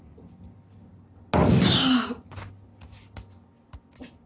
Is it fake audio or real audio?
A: real